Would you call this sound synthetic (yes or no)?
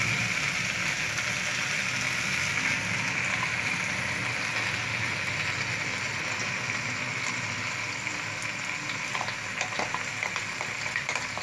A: no